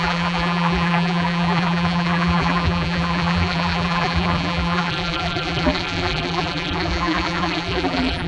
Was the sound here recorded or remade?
remade